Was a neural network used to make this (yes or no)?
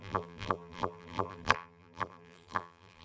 yes